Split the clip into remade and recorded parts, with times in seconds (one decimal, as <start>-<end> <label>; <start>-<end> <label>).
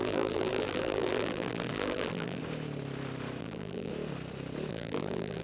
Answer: 0.0-2.4 remade; 2.4-3.4 recorded; 3.4-3.9 remade; 3.9-4.7 recorded; 4.7-5.4 remade